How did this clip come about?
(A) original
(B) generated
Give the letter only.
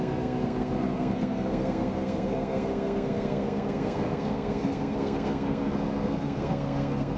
B